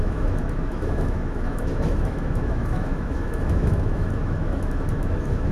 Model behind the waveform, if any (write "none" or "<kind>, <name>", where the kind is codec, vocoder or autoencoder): autoencoder, DAC-VAE